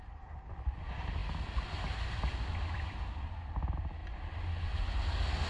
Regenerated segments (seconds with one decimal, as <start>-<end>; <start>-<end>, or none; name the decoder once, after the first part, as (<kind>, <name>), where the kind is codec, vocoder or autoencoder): 4.0-4.5 (vocoder, BigVGAN v2)

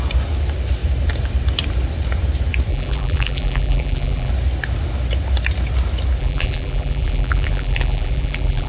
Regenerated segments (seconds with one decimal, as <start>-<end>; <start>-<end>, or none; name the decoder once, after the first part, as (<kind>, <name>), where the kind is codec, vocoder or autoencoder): 2.7-4.3 (vocoder, BigVGAN v2); 6.2-8.7

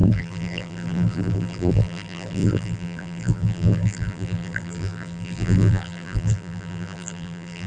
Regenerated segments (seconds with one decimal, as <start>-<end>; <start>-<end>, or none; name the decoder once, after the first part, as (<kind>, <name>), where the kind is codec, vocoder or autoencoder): 0.0-7.7 (vocoder, BigVGAN v2)

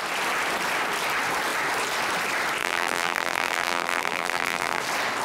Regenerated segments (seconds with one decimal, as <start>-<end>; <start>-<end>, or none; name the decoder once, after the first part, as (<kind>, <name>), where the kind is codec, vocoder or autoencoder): 2.6-4.8 (vocoder, BigVGAN v2)

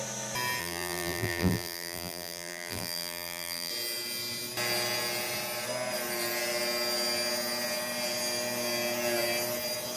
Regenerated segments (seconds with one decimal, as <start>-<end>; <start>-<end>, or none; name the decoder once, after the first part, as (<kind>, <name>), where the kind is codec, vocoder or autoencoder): 0.6-3.7 (vocoder, BigVGAN v2)

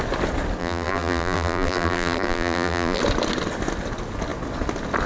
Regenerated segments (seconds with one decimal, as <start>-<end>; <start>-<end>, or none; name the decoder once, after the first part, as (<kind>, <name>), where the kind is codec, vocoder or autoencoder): 0.6-3.0 (vocoder, BigVGAN v2)